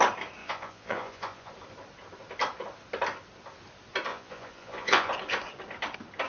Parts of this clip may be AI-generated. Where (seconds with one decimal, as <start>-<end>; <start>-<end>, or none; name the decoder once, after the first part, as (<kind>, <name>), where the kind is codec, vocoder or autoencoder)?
0.4-1.5 (vocoder, Vocos); 4.1-5.1

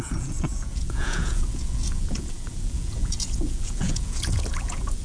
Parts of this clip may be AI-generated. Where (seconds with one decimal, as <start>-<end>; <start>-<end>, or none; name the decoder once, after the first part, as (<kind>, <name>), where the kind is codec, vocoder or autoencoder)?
0.0-5.0 (vocoder, Vocos)

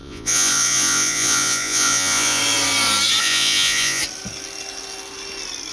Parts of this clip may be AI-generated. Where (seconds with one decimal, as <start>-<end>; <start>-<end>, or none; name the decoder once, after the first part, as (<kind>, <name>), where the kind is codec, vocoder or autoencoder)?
0.0-2.4 (vocoder, Vocos); 3.2-4.0

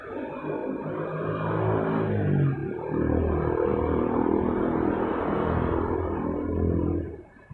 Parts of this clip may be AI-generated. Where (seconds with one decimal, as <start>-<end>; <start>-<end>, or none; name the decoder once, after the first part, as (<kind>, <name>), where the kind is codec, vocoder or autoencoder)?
none

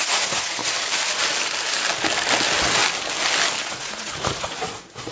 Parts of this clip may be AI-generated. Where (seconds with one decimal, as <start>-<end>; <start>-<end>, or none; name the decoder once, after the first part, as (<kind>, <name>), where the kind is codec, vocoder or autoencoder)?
0.0-0.6 (vocoder, Vocos); 3.7-5.1